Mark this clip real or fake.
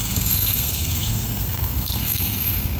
fake